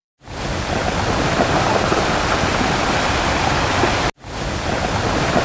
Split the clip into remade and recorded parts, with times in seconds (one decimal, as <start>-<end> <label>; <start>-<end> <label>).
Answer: 0.0-2.2 remade; 2.2-5.4 recorded